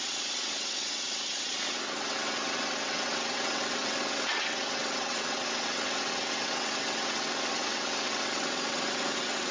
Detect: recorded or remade remade